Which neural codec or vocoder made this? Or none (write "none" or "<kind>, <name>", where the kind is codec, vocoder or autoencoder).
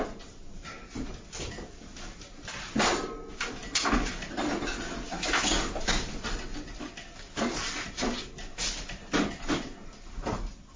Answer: none